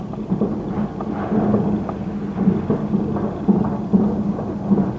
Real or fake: real